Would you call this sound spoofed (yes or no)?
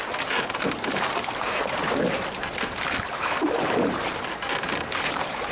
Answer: yes